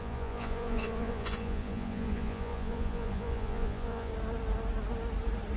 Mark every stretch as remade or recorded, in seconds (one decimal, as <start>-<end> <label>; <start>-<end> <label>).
0.0-4.1 remade; 4.1-5.6 recorded